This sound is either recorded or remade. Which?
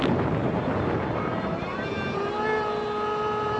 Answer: remade